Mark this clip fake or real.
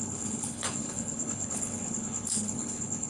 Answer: fake